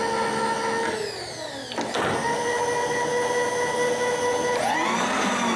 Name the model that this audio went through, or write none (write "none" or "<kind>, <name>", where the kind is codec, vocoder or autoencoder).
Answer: none